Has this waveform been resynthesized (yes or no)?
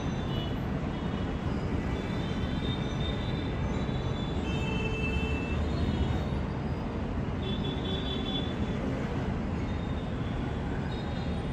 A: no